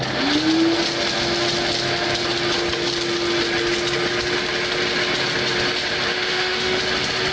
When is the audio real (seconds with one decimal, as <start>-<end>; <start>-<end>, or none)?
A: 0.0-6.1; 6.8-7.3